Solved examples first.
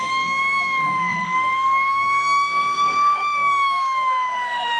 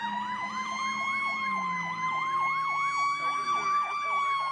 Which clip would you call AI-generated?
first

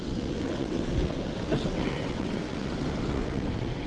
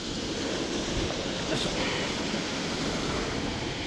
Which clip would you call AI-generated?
first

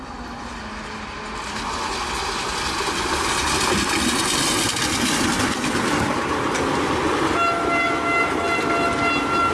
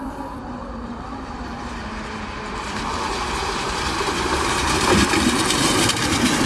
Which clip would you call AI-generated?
second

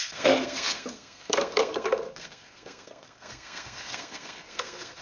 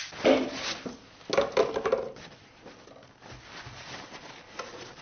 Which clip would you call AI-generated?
first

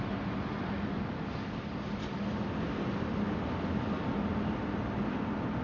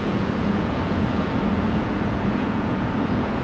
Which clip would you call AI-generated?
second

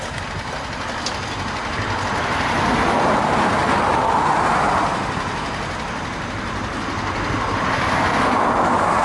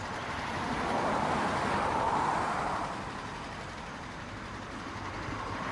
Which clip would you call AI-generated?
second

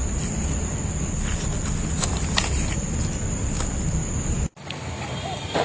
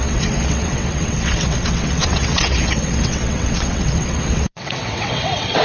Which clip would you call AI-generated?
second